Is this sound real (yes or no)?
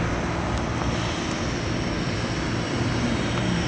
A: yes